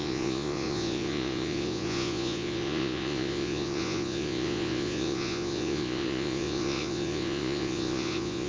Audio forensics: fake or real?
fake